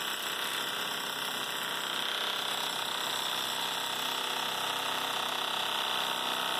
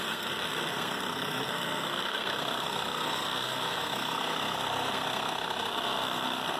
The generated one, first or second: second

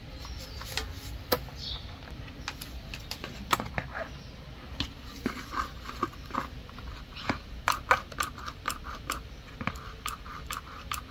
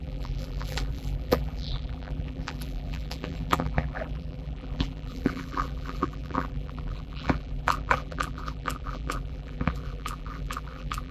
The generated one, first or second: second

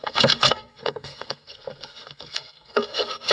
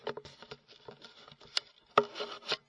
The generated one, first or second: first